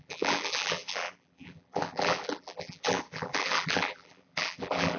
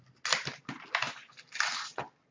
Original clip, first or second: second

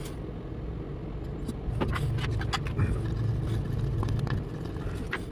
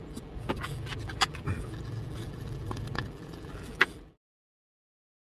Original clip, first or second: first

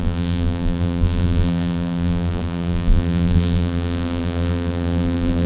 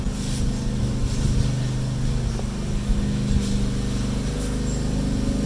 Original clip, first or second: second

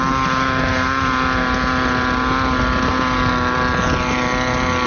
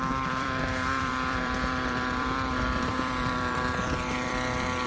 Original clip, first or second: first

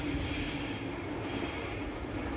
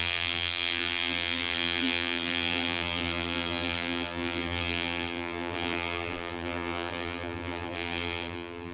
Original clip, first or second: first